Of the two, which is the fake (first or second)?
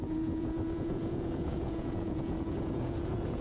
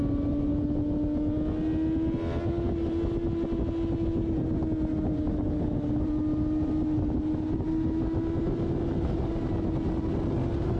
first